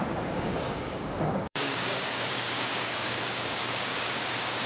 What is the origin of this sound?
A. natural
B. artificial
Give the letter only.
B